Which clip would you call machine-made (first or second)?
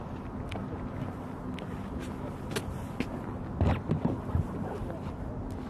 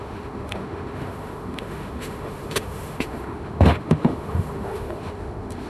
second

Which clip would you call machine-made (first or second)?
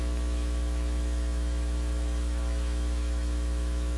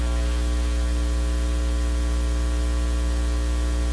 first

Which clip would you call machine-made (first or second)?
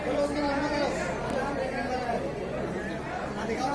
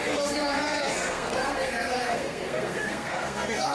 second